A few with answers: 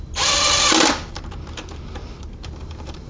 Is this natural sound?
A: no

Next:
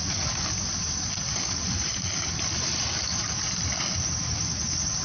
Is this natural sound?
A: yes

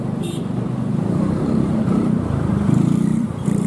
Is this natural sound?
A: no